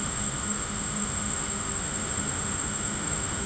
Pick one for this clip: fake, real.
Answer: fake